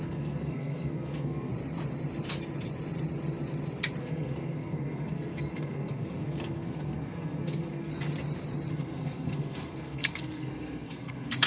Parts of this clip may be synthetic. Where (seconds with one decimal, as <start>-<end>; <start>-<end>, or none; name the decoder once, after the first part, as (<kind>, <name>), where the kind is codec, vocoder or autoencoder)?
0.0-1.5 (codec, SNAC); 4.0-7.9; 8.7-11.5